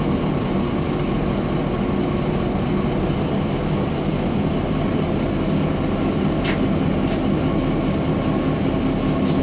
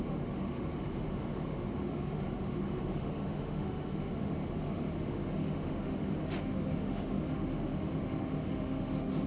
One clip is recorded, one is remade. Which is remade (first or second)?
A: second